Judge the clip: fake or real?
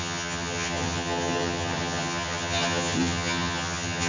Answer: fake